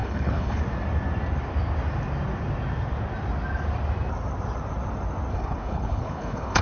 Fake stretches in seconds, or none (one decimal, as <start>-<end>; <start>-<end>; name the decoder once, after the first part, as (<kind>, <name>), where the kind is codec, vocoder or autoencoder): 0.0-0.6 (codec, HILCodec); 5.3-6.6